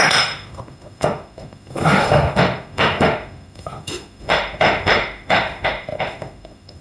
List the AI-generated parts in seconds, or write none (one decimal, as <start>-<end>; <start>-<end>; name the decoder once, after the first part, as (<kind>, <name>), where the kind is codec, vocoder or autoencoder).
0.0-6.8 (autoencoder, DAC-VAE)